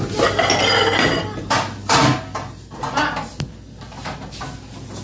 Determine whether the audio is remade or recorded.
recorded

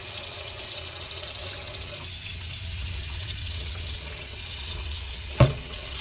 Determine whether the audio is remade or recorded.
remade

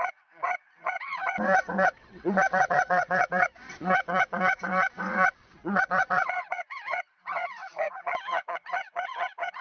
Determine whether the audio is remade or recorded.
remade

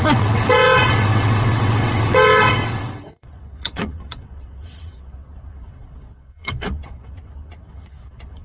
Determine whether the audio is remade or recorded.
remade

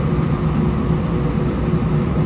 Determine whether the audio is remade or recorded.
recorded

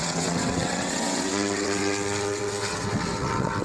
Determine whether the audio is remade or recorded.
remade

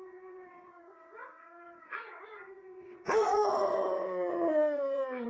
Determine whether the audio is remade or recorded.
remade